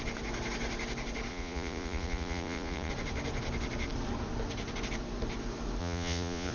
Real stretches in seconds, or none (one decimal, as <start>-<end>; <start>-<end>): 0.0-1.3; 2.9-5.8